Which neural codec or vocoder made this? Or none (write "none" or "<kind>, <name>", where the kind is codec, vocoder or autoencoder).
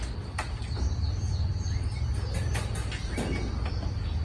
none